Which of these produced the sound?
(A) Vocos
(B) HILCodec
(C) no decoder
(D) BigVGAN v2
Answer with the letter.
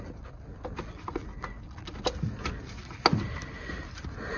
C